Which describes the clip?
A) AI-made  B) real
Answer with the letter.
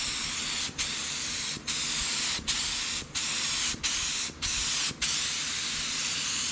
A